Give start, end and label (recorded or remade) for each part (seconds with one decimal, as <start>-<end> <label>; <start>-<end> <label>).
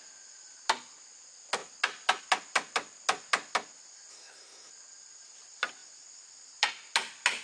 0.0-4.1 recorded; 4.1-4.7 remade; 4.7-7.4 recorded